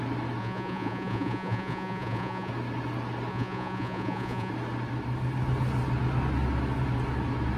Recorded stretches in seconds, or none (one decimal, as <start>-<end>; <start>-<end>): 0.0-0.4; 2.5-3.3; 4.5-7.6